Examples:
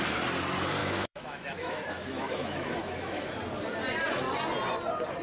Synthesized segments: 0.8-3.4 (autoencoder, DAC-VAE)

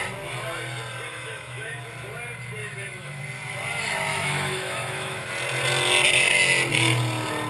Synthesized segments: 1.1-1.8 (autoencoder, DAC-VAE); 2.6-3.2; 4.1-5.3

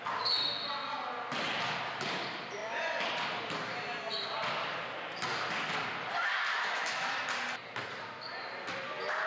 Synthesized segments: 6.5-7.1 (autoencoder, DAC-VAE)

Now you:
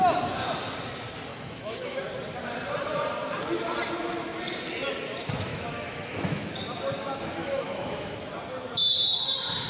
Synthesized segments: 1.3-2.0 (autoencoder, DAC-VAE); 5.5-6.5; 7.4-8.3

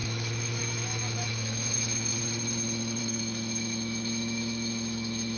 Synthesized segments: 0.0-2.1 (autoencoder, DAC-VAE); 3.0-5.4

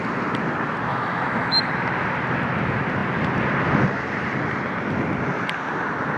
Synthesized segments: 0.9-1.7 (autoencoder, DAC-VAE)

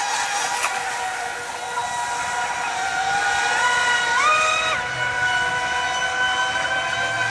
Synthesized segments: none